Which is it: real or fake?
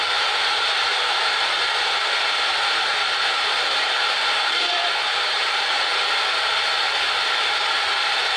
fake